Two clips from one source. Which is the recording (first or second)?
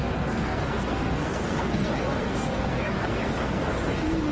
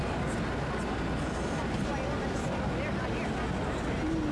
second